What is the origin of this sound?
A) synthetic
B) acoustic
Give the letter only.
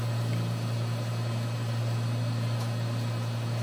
B